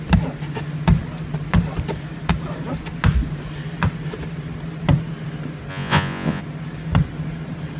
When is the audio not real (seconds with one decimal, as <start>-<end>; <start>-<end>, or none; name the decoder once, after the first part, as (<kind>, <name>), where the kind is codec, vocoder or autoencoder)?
5.7-6.4 (vocoder, Vocos)